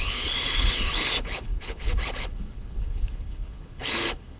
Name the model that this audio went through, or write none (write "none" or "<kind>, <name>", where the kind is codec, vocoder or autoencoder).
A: codec, HILCodec